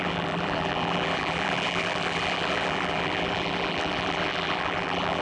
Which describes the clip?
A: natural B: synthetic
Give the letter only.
B